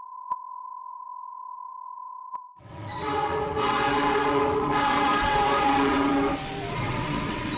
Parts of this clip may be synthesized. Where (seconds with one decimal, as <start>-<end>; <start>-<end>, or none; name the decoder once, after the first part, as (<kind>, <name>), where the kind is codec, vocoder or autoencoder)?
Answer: 0.0-6.1 (vocoder, WaveNeXt); 6.7-7.6